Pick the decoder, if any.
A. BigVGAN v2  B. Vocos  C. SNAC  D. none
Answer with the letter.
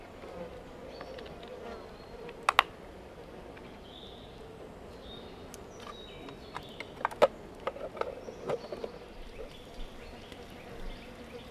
D